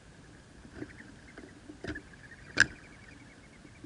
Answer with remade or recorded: recorded